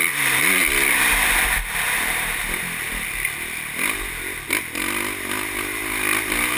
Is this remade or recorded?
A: recorded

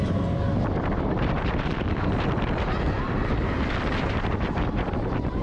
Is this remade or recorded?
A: recorded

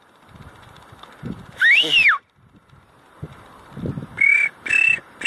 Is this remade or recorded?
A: recorded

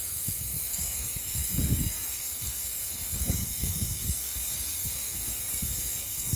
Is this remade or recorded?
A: remade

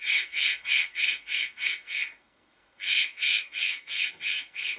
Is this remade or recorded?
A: remade